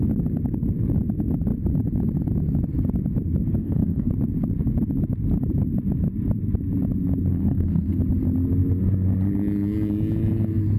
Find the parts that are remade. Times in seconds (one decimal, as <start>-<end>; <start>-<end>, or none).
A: 3.6-4.1; 7.3-8.0